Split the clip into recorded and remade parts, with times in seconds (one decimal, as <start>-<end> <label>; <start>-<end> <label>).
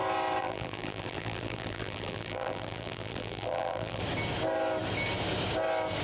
0.0-0.4 recorded; 0.4-4.0 remade; 4.0-6.0 recorded